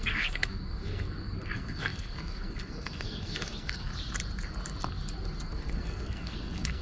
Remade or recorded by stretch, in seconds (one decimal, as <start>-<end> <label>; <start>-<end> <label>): 0.0-3.9 remade; 3.9-5.5 recorded; 5.5-6.8 remade